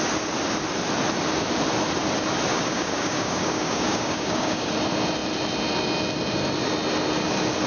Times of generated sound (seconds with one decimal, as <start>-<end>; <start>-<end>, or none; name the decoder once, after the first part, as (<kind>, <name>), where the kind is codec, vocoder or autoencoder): 2.5-4.7 (codec, DAC)